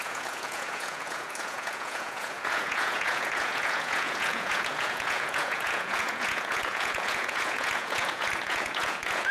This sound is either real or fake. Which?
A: fake